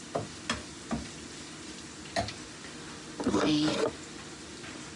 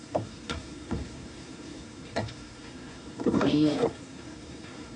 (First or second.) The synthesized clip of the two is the second